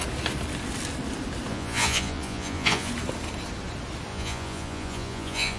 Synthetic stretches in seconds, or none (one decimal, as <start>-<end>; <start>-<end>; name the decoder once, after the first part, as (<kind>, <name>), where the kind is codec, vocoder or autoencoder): 1.5-2.9 (vocoder, Vocos); 4.1-5.6